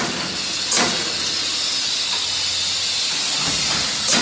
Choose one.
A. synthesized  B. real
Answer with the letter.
B